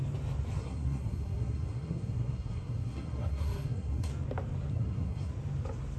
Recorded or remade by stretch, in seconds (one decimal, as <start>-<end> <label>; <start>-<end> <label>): 0.0-0.6 recorded; 0.6-4.1 remade; 4.1-4.7 recorded; 4.7-5.3 remade; 5.3-6.0 recorded